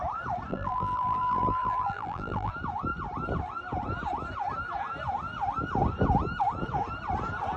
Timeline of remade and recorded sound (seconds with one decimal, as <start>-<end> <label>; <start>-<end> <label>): 0.0-0.5 recorded; 0.5-2.5 remade; 2.5-7.6 recorded